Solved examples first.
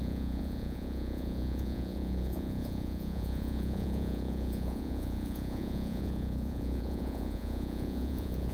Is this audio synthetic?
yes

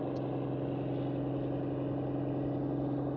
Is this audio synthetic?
no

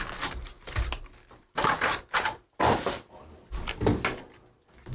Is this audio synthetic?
no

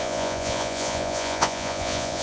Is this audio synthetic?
yes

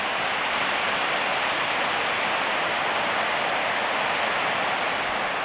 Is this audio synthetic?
no